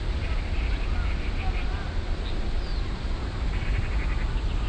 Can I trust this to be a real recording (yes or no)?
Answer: yes